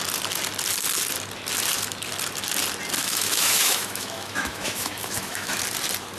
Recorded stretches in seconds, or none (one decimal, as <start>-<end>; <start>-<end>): 0.0-3.0; 5.6-6.2